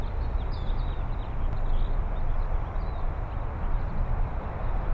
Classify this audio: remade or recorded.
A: recorded